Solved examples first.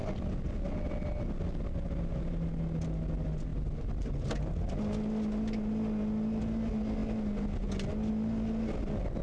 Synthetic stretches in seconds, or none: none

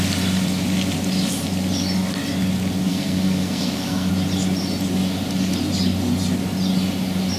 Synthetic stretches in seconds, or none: 2.9-4.1 (codec, SNAC)

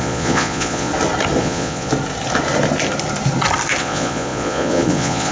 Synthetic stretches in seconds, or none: 0.0-0.9 (vocoder, Vocos); 1.4-1.9; 3.8-5.3

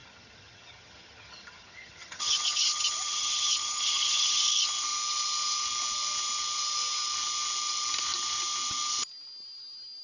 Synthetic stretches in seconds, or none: 0.0-4.4 (vocoder, HiFi-GAN)

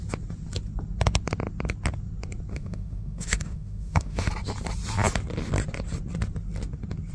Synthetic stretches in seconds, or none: 2.5-4.3 (autoencoder, DAC-VAE)

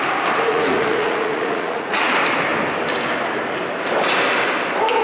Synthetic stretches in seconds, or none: 0.5-2.1 (vocoder, Vocos)